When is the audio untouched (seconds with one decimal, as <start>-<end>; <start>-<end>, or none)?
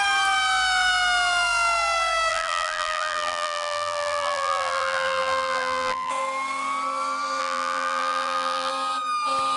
0.0-2.3; 6.1-7.4; 8.7-9.6